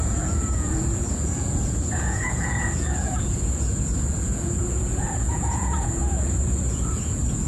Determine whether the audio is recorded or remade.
remade